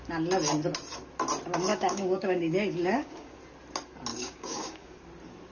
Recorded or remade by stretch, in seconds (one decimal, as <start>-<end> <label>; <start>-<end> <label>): 0.0-1.7 recorded; 1.7-3.4 remade; 3.4-4.1 recorded; 4.1-5.0 remade; 5.0-5.5 recorded